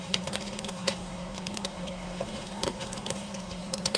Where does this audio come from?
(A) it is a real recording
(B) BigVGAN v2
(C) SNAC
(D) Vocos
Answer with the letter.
C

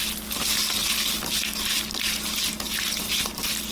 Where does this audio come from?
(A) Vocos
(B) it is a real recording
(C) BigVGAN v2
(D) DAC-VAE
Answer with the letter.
B